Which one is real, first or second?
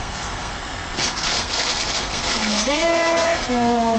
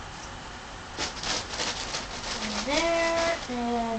second